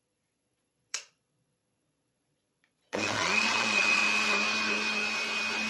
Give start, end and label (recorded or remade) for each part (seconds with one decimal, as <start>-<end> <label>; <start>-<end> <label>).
0.0-4.0 remade; 4.0-5.7 recorded